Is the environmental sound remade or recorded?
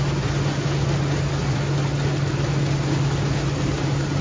recorded